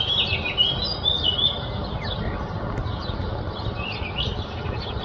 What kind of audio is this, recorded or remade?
recorded